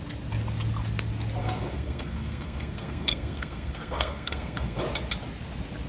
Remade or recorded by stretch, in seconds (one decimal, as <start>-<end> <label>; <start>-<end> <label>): 0.0-1.4 recorded; 1.4-4.8 remade; 4.8-5.9 recorded